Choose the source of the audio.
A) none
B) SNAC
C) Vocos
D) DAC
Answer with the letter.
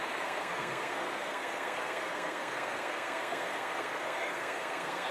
B